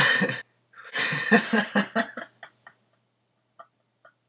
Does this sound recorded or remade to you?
recorded